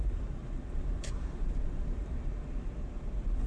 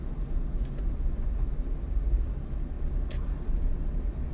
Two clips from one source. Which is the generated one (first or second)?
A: first